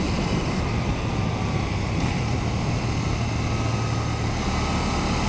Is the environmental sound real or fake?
real